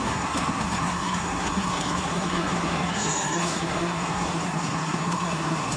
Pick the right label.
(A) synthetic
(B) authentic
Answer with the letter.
A